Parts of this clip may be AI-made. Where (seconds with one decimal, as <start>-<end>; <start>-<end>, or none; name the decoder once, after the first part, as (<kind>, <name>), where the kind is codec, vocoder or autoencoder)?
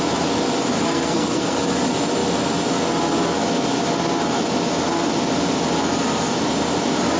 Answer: 0.8-1.7 (codec, SNAC)